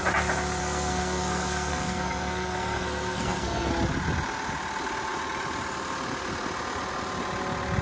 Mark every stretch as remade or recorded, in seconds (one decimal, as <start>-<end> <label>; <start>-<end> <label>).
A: 0.0-0.6 recorded; 0.6-3.7 remade; 3.7-7.8 recorded